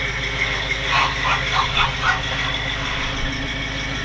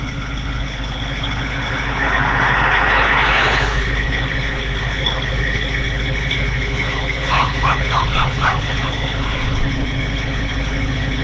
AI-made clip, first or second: second